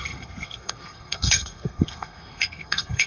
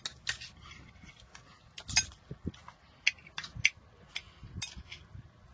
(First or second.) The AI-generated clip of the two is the first